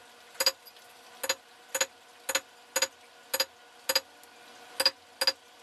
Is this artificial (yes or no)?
no